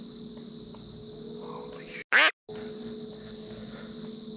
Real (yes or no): yes